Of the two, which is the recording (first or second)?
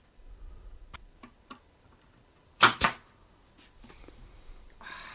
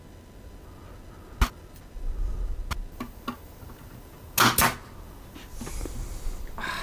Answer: second